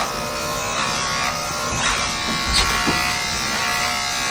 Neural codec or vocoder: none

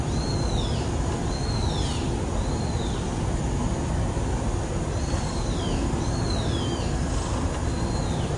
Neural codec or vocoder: none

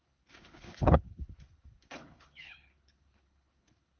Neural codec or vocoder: codec, HILCodec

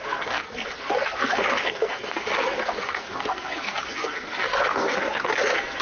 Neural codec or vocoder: codec, SNAC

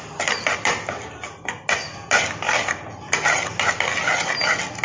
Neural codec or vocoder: none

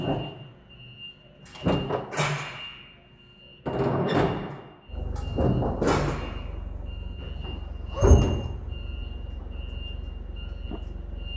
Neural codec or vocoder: none